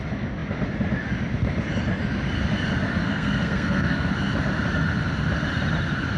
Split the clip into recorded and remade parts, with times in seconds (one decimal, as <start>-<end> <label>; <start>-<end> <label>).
0.0-3.0 recorded; 3.0-4.1 remade; 4.1-6.2 recorded